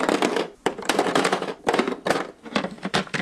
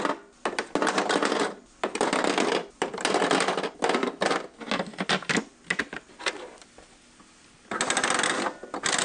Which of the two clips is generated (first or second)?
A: first